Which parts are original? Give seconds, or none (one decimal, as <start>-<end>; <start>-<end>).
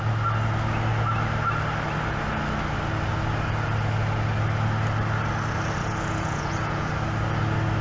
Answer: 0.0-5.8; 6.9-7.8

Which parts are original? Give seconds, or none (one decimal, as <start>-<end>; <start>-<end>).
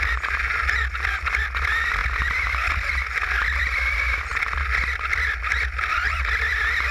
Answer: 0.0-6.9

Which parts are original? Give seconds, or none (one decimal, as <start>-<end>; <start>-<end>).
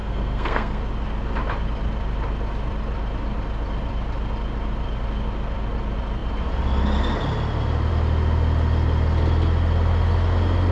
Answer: 0.8-10.7